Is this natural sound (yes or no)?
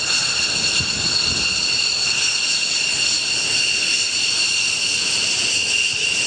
yes